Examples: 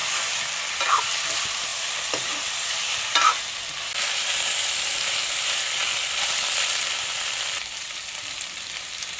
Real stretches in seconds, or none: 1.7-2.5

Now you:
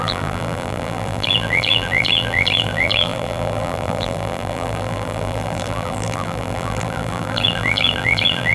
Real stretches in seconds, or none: none

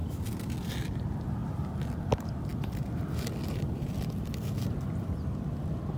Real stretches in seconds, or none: 0.7-2.5; 5.1-6.0

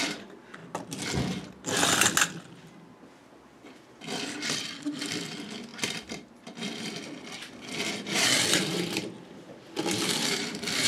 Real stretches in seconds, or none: 0.6-4.5

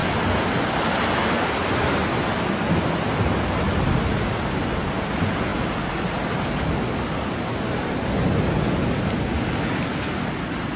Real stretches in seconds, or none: 0.0-10.8